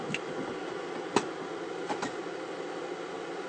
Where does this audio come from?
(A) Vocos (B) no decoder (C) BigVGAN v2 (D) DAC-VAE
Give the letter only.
B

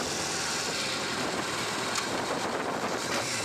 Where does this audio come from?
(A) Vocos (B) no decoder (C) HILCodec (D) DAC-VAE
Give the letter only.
B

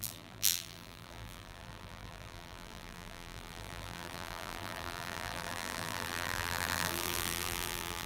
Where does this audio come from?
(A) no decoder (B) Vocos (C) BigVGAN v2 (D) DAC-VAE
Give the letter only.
C